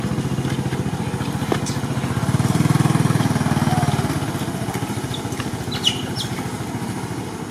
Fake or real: real